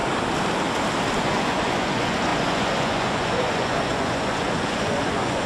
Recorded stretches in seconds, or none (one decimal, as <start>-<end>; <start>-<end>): 0.0-1.2